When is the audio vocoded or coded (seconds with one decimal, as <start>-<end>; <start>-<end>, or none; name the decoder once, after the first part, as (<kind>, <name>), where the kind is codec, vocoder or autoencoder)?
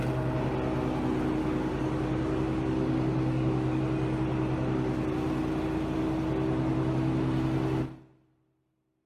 1.4-3.8 (codec, DAC)